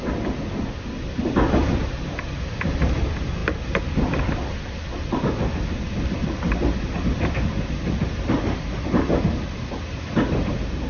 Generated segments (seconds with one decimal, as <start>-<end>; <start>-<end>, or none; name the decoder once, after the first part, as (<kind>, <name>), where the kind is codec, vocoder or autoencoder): none